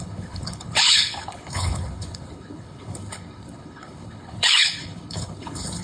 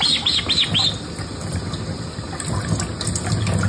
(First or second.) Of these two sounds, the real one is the second